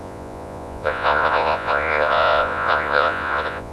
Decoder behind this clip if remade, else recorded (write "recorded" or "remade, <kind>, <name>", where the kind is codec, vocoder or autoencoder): remade, vocoder, Vocos